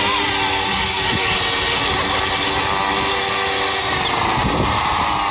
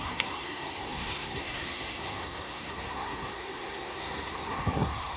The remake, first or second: second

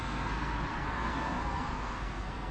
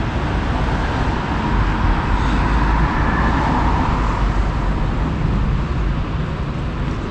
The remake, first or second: first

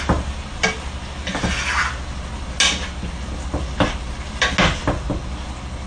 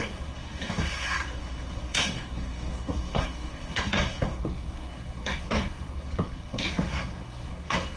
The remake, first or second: second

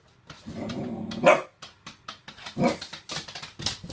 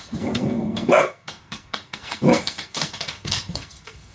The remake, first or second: second